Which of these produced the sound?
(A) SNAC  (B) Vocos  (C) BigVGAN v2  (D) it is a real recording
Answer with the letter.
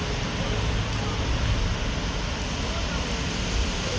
D